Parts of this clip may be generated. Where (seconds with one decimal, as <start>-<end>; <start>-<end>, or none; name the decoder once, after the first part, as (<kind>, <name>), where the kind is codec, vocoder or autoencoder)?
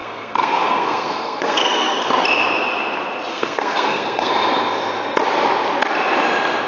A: 0.0-2.1 (codec, SNAC); 3.3-4.3